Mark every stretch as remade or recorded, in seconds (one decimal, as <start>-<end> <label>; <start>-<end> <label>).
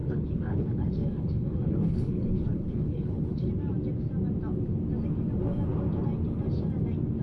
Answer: 0.0-3.5 remade; 3.5-7.2 recorded